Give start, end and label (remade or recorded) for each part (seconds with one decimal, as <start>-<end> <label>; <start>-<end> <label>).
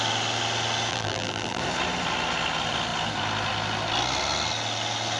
0.0-0.9 recorded; 0.9-1.6 remade; 1.6-5.2 recorded